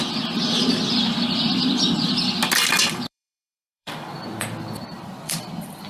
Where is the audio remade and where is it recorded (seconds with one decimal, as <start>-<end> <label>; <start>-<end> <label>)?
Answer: 0.0-2.8 recorded; 2.8-5.5 remade; 5.5-5.9 recorded